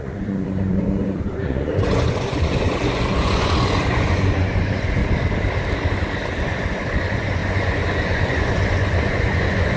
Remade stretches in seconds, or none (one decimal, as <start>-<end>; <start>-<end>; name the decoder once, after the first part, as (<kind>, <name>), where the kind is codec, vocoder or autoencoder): 0.0-5.0 (vocoder, Vocos); 6.4-9.8